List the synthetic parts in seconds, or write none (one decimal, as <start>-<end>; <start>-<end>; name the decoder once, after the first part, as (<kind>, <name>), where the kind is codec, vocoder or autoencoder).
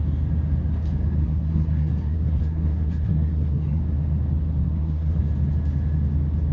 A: 1.2-3.8 (codec, SNAC); 4.6-5.2